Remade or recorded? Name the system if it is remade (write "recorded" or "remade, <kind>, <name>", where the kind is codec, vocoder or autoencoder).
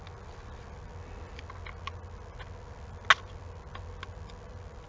recorded